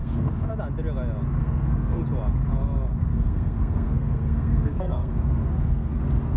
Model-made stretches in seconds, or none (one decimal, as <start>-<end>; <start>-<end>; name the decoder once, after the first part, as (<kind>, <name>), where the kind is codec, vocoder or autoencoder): 0.0-0.5 (codec, SNAC); 1.4-2.0; 3.1-6.0